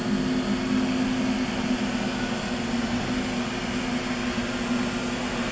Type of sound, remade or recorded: recorded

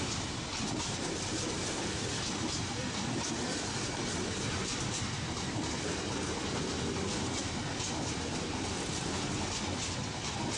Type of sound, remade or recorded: recorded